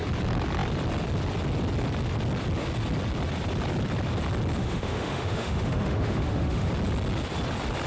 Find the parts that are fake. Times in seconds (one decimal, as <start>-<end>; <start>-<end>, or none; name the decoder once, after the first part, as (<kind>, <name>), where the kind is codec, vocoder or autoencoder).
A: 4.6-6.7 (autoencoder, DAC-VAE)